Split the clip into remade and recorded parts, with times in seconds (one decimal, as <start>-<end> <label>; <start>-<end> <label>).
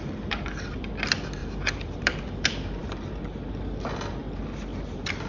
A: 0.0-5.3 recorded